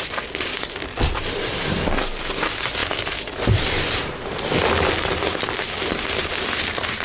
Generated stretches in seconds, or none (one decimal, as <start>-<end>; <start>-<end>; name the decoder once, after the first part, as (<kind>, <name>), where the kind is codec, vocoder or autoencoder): 2.8-4.9 (vocoder, BigVGAN v2)